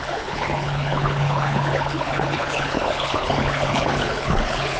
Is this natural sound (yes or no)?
no